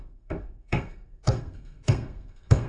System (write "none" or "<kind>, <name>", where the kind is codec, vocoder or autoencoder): codec, SNAC